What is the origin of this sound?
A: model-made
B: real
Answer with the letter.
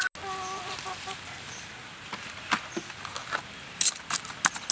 B